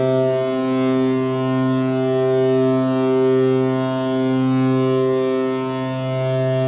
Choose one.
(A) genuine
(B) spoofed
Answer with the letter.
A